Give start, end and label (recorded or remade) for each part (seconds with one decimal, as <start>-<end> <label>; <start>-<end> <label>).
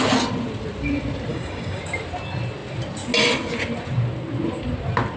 0.0-1.3 recorded; 1.3-1.8 remade; 1.8-5.2 recorded